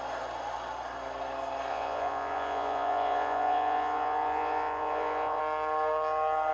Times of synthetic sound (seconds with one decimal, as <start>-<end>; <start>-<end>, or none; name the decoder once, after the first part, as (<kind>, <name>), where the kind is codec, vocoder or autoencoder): 1.7-5.4 (vocoder, Vocos)